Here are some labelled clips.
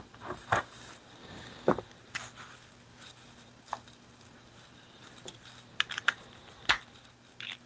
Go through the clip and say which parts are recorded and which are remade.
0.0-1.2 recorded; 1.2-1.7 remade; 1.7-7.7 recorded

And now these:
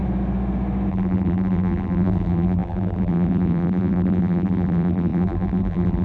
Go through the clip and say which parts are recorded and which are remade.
0.0-0.9 recorded; 0.9-6.0 remade

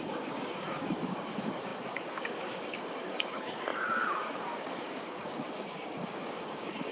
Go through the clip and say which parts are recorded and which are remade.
0.0-6.9 remade

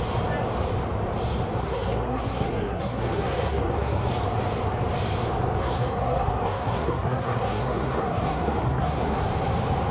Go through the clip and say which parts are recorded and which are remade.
0.0-1.6 recorded; 1.6-4.1 remade; 4.1-5.6 recorded; 5.6-9.3 remade; 9.3-9.9 recorded